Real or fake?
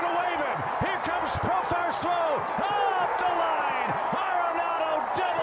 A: real